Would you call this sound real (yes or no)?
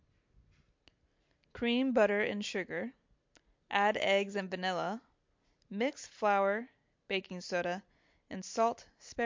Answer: yes